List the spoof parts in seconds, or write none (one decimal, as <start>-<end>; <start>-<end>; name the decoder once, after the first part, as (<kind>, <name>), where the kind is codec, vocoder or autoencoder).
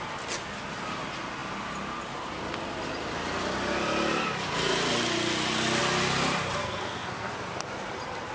6.6-7.3 (codec, SNAC)